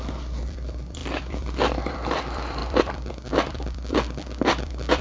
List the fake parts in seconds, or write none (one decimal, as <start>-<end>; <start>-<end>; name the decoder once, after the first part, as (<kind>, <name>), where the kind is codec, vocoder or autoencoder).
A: 0.0-5.0 (vocoder, BigVGAN v2)